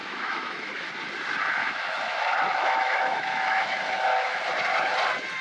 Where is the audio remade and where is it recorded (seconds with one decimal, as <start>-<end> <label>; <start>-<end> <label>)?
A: 0.0-0.9 remade; 0.9-1.6 recorded; 1.6-4.4 remade; 4.4-5.4 recorded